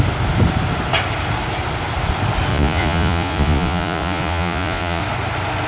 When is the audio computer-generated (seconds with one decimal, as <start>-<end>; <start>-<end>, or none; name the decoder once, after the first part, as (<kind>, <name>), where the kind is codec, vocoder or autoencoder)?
2.5-5.0 (vocoder, Vocos)